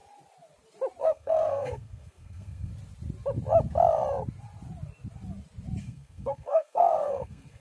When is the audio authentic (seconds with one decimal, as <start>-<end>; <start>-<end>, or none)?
0.0-1.0; 2.7-5.8